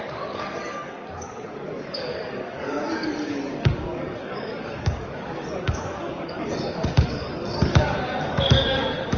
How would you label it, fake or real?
fake